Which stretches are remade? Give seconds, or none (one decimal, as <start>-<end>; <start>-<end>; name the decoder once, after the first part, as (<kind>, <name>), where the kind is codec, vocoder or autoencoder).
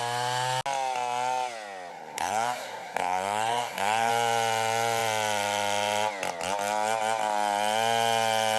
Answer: 1.9-4.1 (codec, SNAC)